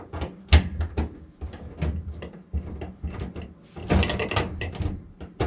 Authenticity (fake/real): real